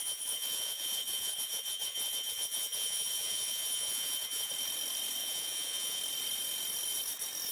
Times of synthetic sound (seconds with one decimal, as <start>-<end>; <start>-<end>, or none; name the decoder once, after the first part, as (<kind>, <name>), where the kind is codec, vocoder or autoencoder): 0.0-4.5 (vocoder, Vocos); 5.2-6.0